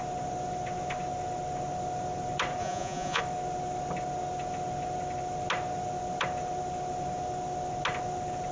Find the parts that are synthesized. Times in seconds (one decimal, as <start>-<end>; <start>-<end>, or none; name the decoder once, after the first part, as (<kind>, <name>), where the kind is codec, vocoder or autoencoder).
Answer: 2.6-3.2 (vocoder, Vocos)